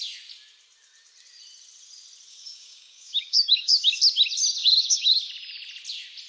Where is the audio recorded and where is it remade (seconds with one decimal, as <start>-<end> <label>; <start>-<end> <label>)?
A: 0.0-2.3 recorded; 2.3-4.0 remade; 4.0-4.6 recorded; 4.6-5.2 remade; 5.2-6.3 recorded